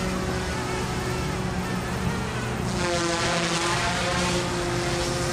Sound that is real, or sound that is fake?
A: real